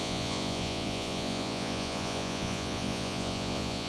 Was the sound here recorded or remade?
remade